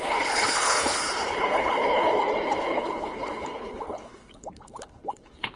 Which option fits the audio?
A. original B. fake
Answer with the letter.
B